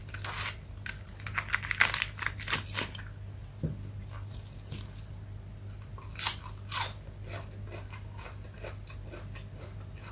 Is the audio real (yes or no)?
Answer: yes